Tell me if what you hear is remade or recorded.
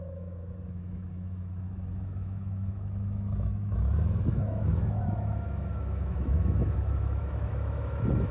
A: remade